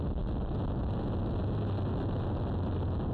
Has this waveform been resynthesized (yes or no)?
no